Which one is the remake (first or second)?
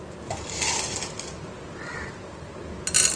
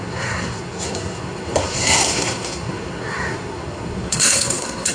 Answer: second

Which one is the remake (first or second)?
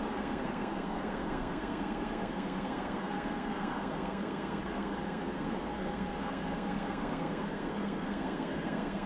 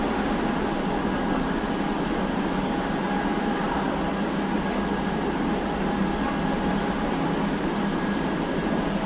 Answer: first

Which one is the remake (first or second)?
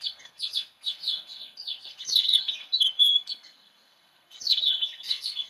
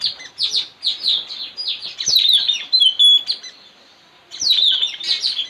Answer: first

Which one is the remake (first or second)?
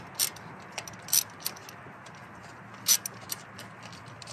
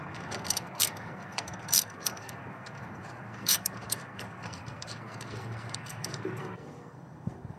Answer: second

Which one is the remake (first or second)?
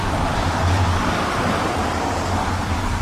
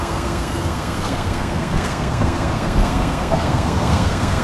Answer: second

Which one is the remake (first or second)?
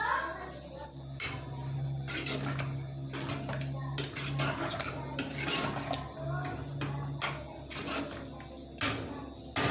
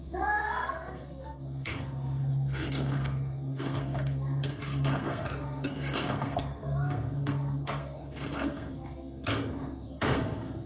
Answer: second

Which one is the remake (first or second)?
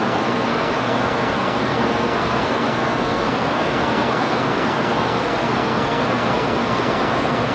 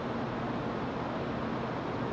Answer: first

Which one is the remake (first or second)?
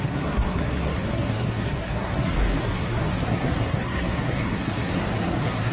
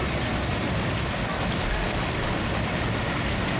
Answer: first